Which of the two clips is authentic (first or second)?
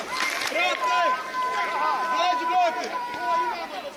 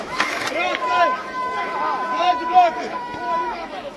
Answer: first